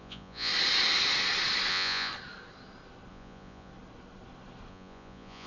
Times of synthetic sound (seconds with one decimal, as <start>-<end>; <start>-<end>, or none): 0.0-0.5; 1.7-2.1; 3.1-3.7; 4.7-5.5

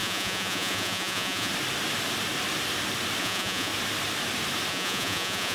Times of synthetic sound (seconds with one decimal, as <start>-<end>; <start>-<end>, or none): 0.0-1.5; 3.2-3.7; 4.7-5.5

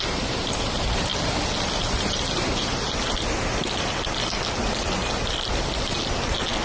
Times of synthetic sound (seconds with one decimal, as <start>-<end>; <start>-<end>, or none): none